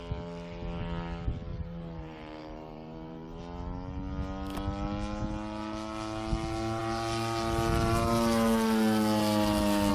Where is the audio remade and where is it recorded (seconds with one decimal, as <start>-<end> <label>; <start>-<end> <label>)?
0.0-1.5 recorded; 1.5-3.4 remade; 3.4-9.9 recorded